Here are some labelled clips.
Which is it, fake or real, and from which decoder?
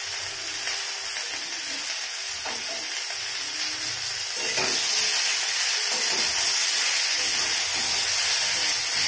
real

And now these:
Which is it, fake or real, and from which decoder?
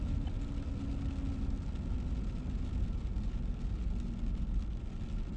real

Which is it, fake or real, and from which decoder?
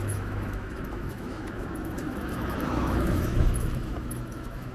fake, autoencoder, DAC-VAE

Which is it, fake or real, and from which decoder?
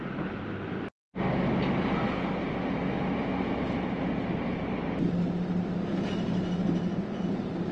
real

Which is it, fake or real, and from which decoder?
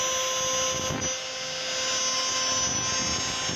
real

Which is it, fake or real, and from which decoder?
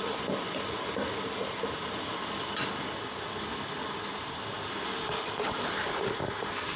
real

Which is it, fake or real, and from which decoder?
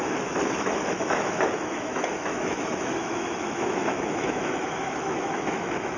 fake, autoencoder, DAC-VAE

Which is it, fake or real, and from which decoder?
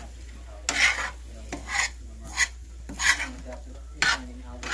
real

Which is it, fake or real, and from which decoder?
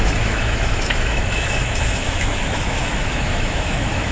fake, autoencoder, DAC-VAE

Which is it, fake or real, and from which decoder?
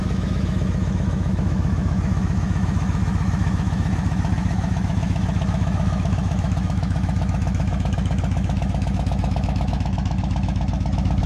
fake, autoencoder, DAC-VAE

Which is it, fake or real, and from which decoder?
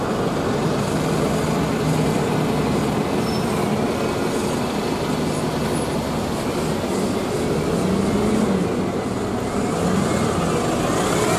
real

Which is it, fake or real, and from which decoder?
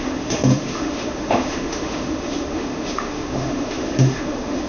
fake, autoencoder, DAC-VAE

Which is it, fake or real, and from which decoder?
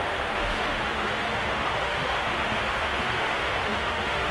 fake, autoencoder, DAC-VAE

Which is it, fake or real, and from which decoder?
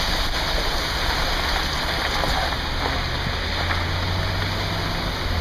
real